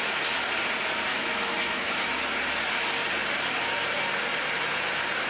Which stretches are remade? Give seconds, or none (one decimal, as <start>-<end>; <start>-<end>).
1.1-2.2